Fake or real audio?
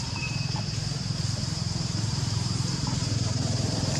fake